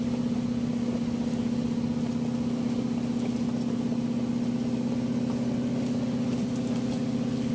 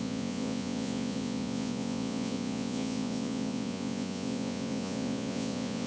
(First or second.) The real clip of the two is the first